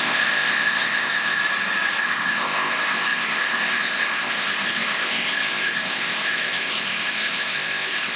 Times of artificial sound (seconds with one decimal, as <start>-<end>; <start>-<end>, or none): 0.0-1.4; 2.0-8.2